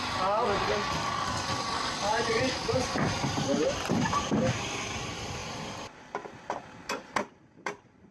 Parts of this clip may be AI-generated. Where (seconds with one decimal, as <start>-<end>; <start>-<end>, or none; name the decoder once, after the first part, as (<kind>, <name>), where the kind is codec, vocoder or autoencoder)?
none